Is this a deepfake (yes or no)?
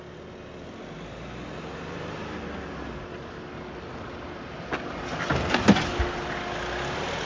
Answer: no